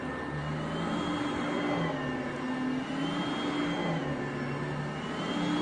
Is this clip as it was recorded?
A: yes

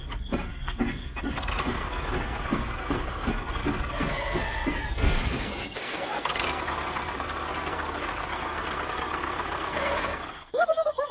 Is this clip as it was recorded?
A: no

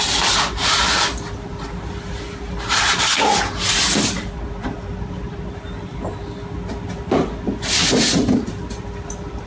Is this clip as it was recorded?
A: yes